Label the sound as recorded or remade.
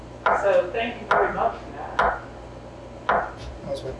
recorded